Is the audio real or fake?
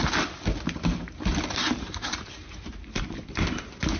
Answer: real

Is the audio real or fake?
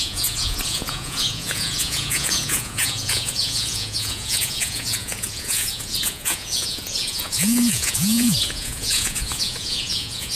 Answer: fake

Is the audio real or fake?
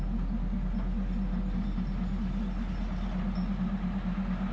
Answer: real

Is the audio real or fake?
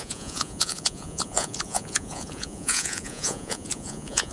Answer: fake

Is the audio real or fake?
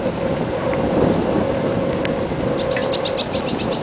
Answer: real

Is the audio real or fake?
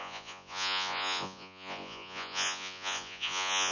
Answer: fake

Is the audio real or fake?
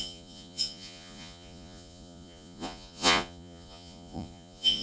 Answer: fake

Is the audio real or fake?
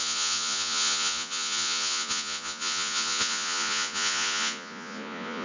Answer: fake